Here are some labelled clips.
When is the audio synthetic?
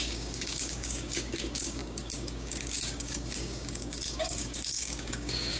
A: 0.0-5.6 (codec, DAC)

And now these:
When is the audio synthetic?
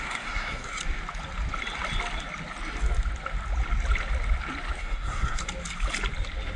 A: 0.0-0.8 (codec, SNAC); 4.8-5.4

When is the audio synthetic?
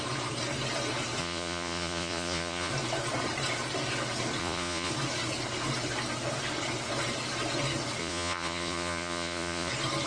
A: 1.2-2.7 (vocoder, Vocos); 4.4-4.9; 8.0-9.7